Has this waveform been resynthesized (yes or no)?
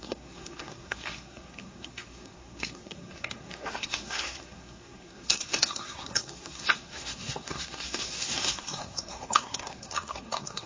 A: yes